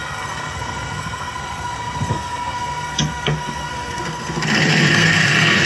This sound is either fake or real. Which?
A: fake